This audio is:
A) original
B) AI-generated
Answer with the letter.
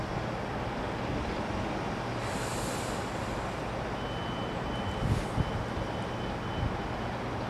A